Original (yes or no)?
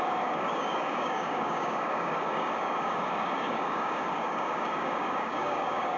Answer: no